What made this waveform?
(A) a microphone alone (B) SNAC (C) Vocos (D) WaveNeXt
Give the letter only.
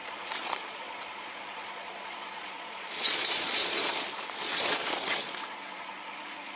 C